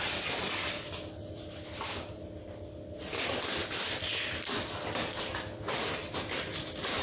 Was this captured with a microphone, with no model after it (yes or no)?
yes